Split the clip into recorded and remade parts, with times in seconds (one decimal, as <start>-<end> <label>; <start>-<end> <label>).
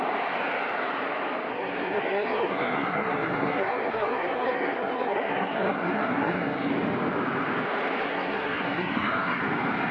0.0-1.5 recorded; 1.5-6.7 remade; 6.7-8.0 recorded; 8.0-9.4 remade; 9.4-9.9 recorded